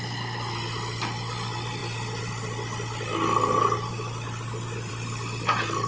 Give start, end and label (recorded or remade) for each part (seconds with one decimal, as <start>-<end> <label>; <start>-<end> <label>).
0.0-5.9 recorded